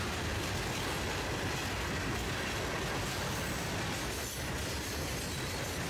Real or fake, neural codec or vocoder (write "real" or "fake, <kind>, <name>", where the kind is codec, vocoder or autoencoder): real